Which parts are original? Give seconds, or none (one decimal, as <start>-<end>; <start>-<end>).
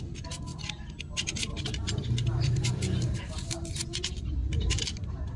0.0-5.4